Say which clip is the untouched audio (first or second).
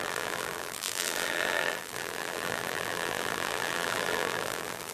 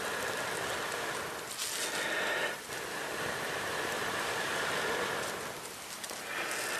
second